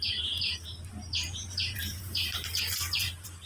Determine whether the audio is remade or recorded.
remade